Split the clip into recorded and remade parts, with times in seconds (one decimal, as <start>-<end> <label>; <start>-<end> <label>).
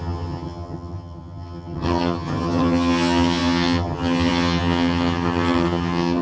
0.0-6.2 remade